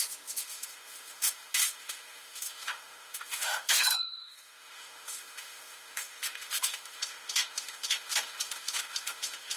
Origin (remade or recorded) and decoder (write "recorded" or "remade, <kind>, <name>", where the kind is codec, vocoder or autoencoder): remade, autoencoder, DAC-VAE